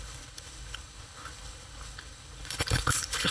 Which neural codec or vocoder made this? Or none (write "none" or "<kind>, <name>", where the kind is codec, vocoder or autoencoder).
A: codec, HILCodec